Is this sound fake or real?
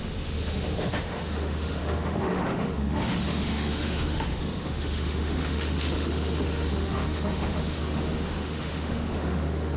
fake